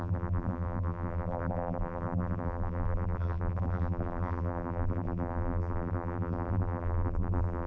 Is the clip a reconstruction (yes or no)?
yes